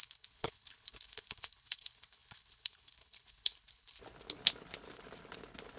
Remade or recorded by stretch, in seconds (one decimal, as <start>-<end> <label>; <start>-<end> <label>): 0.0-4.0 remade; 4.0-5.8 recorded